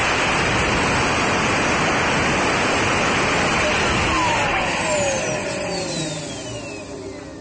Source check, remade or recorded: recorded